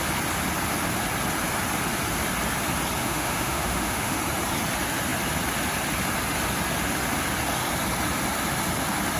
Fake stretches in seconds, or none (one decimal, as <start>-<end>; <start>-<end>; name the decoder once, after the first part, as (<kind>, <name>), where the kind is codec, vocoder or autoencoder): 3.0-4.2 (autoencoder, DAC-VAE)